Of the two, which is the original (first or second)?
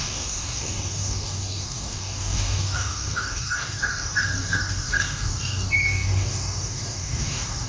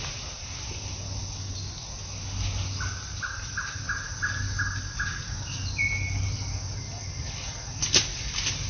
second